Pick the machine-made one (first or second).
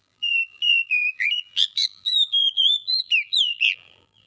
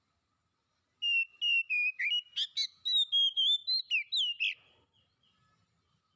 first